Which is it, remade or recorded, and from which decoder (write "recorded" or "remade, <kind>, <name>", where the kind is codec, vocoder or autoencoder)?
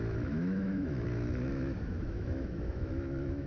remade, autoencoder, DAC-VAE